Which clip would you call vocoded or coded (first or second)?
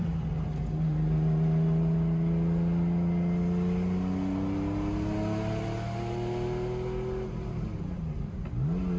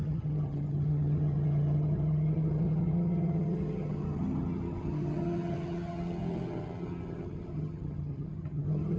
second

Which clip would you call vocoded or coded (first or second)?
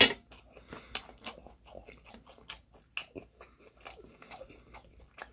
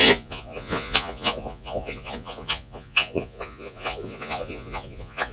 second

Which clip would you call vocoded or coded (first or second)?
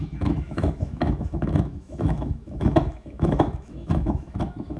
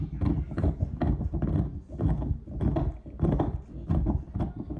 first